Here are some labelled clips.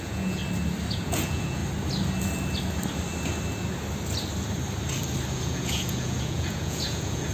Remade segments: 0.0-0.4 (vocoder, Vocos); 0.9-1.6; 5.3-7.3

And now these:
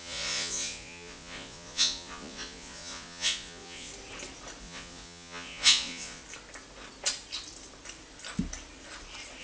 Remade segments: 0.0-3.9 (vocoder, Vocos); 4.6-6.2

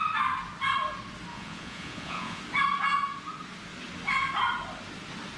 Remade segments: 1.3-2.4 (vocoder, Vocos)

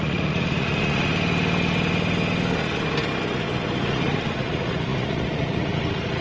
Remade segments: 0.0-1.1 (vocoder, Vocos); 3.9-6.2

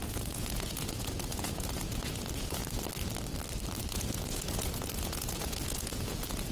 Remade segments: 0.0-2.6 (vocoder, Vocos); 3.9-6.5

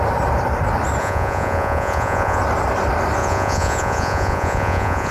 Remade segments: 1.0-2.4 (vocoder, Vocos); 3.2-5.1

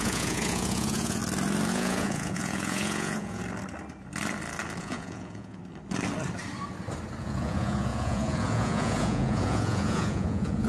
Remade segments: 0.0-1.2 (vocoder, Vocos); 1.7-3.4; 4.8-5.6; 7.2-10.7

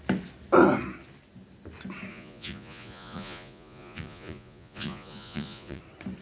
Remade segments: 2.1-5.8 (vocoder, Vocos)